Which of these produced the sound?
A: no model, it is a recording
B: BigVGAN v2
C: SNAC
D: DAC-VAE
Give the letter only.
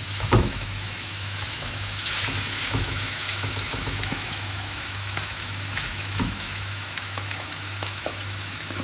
D